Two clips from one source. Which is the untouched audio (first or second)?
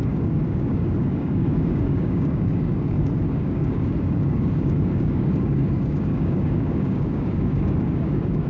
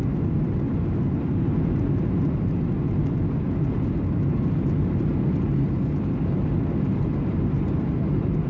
second